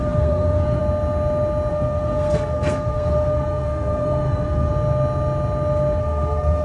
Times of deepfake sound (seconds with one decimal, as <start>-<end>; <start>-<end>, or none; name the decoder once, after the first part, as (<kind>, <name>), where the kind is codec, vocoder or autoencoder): 0.0-0.8 (codec, SNAC); 1.7-4.7; 6.0-6.6